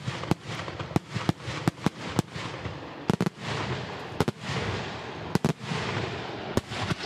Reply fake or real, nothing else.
real